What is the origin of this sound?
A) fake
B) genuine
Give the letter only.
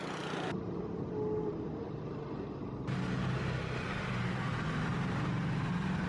B